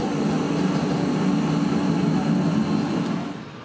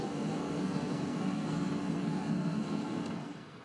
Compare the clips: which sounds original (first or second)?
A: first